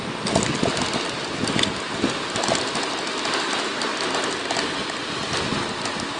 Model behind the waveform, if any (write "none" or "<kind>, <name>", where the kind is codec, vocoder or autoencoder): none